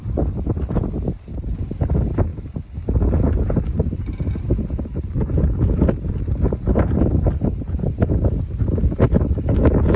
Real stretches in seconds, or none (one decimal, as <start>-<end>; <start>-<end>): 0.0-10.0